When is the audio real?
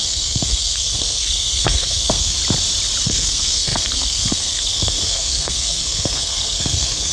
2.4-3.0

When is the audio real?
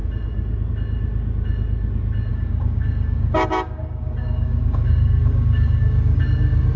0.0-2.3; 6.2-6.8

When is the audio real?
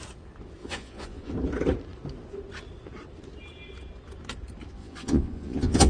0.0-0.6; 1.3-4.8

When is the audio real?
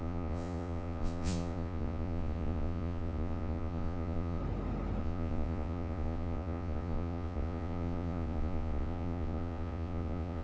4.4-5.0